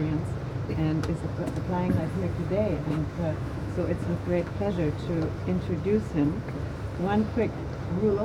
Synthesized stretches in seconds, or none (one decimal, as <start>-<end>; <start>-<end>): 2.8-4.7